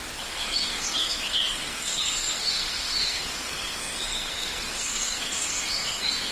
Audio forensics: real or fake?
fake